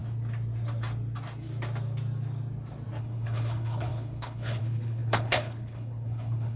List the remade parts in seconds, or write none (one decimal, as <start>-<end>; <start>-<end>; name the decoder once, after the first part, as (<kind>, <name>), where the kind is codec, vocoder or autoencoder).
3.0-6.6 (codec, HILCodec)